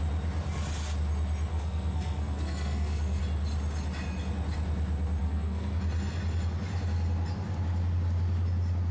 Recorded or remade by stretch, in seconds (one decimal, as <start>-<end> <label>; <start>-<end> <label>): 0.0-1.5 recorded; 1.5-3.2 remade; 3.2-5.2 recorded; 5.2-5.8 remade; 5.8-8.9 recorded

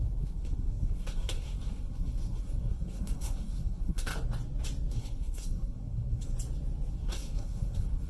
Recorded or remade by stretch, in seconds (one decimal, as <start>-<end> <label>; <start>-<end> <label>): 0.0-4.1 remade; 4.1-4.9 recorded; 4.9-6.3 remade; 6.3-6.9 recorded; 6.9-8.1 remade

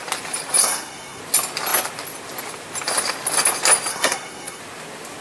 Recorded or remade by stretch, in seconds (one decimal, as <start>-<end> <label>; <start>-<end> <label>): 0.0-0.6 recorded; 0.6-1.2 remade; 1.2-3.9 recorded; 3.9-4.6 remade; 4.6-5.2 recorded

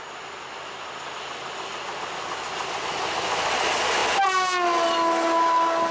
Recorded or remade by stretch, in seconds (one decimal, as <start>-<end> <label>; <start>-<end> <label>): 0.0-5.9 recorded

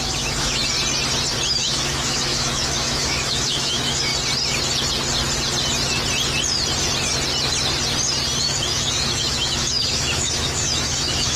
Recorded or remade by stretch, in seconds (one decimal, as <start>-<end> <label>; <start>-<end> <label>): 0.0-0.6 remade; 0.6-1.5 recorded; 1.5-4.1 remade; 4.1-8.4 recorded; 8.4-11.4 remade

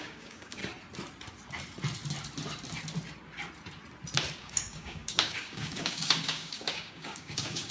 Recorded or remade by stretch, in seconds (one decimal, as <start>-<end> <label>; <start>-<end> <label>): 0.0-0.6 remade; 0.6-4.4 recorded; 4.4-7.7 remade

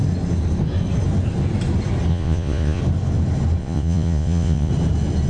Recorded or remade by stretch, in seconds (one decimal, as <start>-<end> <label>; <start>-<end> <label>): 0.0-2.1 recorded; 2.1-2.8 remade; 2.8-3.6 recorded; 3.6-4.7 remade; 4.7-5.3 recorded